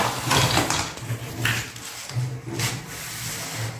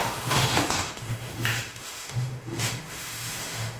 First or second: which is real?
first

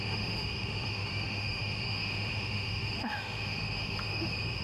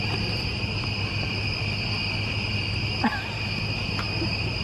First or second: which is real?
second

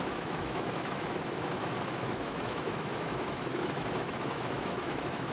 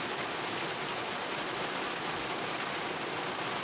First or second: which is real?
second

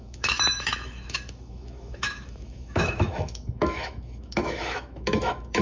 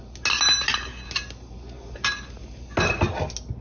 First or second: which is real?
second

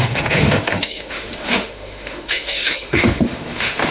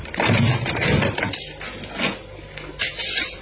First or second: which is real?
second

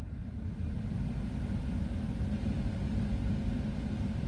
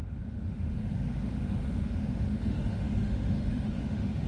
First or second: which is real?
first